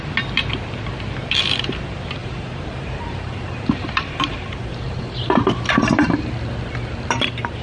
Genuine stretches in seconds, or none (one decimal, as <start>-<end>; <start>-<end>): 0.0-2.2; 6.3-7.6